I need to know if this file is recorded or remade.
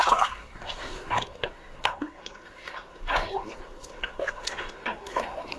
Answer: remade